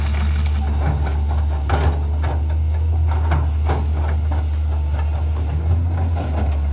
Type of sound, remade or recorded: recorded